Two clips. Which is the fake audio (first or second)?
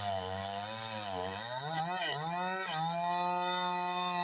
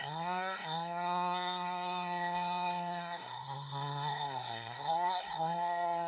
second